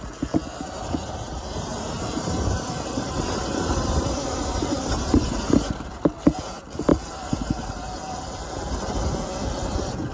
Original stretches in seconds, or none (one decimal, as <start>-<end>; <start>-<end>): 0.0-1.7; 2.3-6.9; 8.0-10.1